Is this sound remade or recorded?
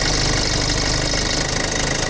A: recorded